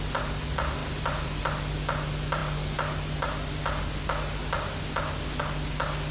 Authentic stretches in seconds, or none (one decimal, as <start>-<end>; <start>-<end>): 0.0-6.1